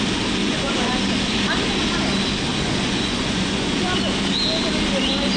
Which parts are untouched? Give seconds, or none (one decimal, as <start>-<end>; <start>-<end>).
0.0-0.4; 0.9-2.5; 3.8-5.4